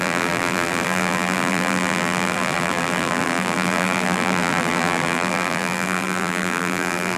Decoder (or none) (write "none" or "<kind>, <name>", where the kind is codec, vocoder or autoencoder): vocoder, BigVGAN v2